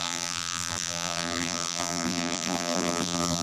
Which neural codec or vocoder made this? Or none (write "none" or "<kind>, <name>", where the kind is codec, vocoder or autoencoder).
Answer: vocoder, BigVGAN v2